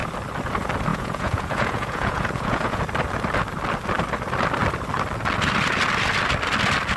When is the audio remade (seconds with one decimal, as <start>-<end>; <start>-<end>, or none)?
0.9-2.8